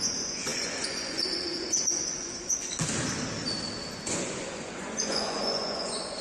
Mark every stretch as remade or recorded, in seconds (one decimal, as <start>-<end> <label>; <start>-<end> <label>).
0.0-2.7 remade; 2.7-3.9 recorded; 3.9-6.2 remade